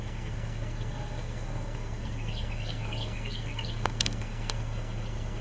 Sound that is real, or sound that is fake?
fake